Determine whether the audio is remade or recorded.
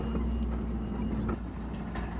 recorded